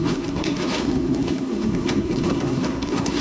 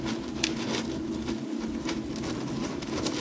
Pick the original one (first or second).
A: second